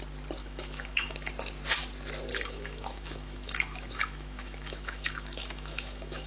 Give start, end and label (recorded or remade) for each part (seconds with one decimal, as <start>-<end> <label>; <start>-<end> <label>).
0.0-0.4 recorded; 0.4-1.3 remade; 1.3-2.3 recorded; 2.3-6.3 remade